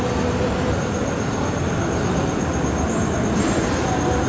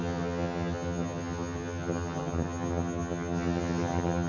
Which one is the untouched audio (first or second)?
first